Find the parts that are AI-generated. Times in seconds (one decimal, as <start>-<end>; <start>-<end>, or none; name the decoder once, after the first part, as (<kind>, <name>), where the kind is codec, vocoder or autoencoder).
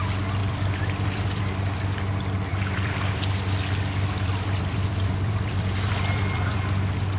0.4-1.4 (vocoder, BigVGAN v2); 2.5-6.6